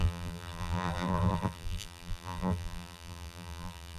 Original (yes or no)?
no